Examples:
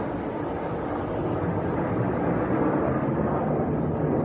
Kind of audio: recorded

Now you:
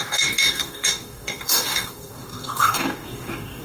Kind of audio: remade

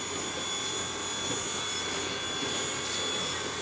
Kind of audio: recorded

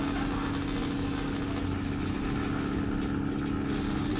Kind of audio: recorded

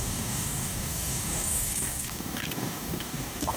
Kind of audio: remade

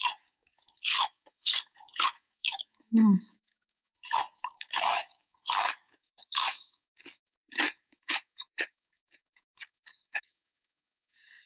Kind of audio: remade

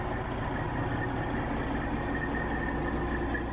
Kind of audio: recorded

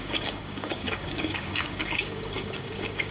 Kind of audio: remade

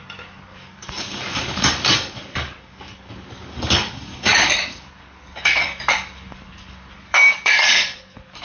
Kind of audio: remade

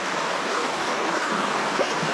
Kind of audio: remade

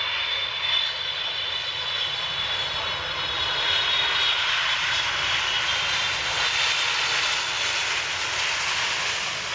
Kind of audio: recorded